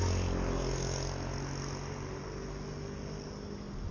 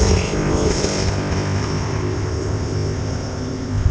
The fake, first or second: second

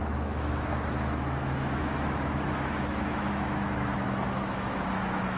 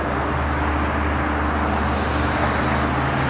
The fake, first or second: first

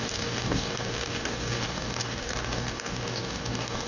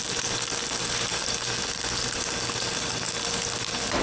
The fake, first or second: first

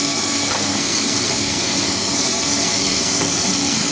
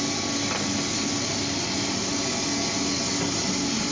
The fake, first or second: first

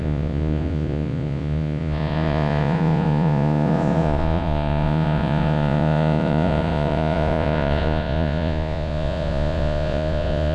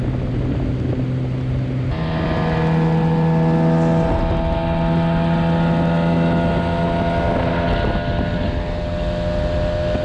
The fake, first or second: first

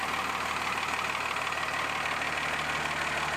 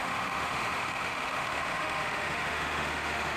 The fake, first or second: second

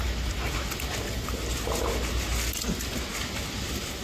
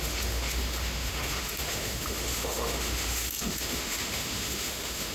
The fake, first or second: second